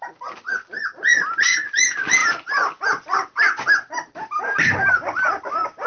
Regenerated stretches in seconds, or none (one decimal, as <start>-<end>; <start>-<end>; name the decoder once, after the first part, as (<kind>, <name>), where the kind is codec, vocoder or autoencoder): none

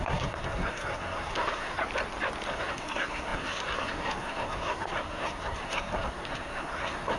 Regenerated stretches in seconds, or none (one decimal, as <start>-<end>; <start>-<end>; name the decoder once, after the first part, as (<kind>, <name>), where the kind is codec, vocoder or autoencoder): 0.0-1.8 (codec, SNAC); 2.5-7.2

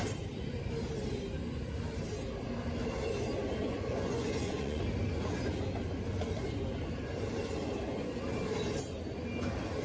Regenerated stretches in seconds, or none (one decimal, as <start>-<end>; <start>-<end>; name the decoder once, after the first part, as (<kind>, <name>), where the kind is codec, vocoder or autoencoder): 3.6-4.8 (vocoder, Vocos)

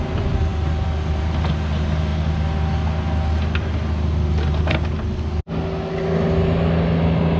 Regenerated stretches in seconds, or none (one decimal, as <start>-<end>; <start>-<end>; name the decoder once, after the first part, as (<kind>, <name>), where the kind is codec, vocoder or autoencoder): none

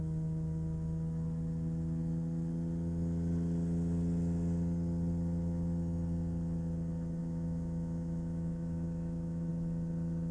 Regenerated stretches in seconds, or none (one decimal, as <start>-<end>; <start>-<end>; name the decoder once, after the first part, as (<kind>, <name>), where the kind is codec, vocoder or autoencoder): 7.2-9.5 (autoencoder, DAC-VAE)

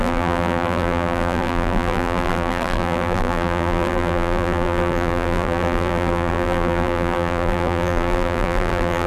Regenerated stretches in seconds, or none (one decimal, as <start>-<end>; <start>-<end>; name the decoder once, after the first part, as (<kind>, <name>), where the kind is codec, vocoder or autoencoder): 0.0-9.1 (vocoder, BigVGAN v2)